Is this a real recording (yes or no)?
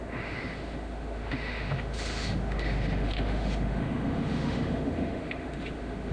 no